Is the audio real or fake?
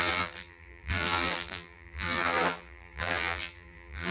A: fake